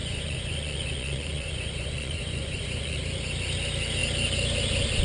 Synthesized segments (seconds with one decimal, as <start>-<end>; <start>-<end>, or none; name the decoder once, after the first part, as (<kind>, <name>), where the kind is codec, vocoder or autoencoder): 0.0-3.0 (vocoder, Vocos)